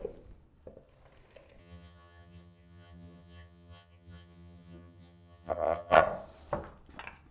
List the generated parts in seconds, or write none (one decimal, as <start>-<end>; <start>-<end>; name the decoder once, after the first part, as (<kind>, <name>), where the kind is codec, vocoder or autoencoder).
1.6-6.0 (vocoder, HiFi-GAN)